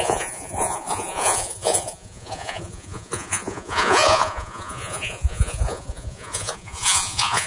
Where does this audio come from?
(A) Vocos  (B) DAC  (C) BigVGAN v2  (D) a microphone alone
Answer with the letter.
A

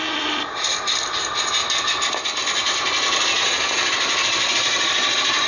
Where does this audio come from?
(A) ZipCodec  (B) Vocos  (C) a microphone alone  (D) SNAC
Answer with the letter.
C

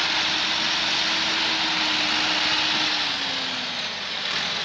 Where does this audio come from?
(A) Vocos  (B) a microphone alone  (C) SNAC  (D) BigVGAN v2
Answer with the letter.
B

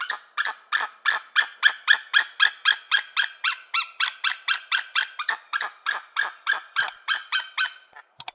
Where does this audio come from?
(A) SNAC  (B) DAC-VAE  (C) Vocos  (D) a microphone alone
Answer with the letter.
D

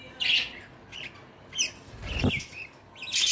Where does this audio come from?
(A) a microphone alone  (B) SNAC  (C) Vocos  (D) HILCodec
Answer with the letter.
A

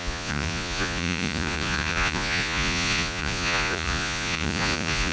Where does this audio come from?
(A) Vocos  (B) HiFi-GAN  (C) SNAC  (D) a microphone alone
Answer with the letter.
A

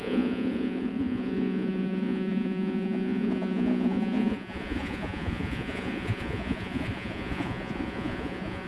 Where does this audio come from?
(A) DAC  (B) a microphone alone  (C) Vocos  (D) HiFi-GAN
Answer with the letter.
C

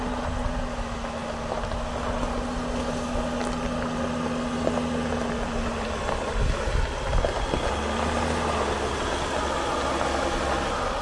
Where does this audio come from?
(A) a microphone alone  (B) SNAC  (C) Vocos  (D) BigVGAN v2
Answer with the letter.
A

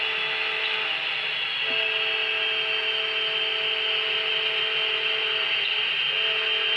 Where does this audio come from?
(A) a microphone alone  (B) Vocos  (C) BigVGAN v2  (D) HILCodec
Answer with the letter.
A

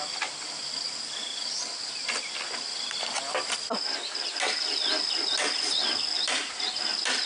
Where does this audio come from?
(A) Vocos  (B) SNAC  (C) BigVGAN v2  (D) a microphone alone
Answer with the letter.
D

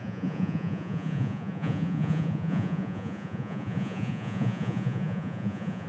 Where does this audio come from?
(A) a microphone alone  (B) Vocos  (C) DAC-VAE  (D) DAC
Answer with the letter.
B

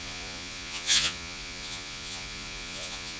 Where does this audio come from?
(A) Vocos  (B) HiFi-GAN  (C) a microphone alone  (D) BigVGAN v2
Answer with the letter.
A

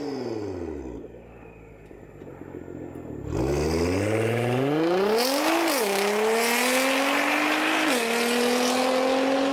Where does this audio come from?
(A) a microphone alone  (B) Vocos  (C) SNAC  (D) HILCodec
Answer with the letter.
A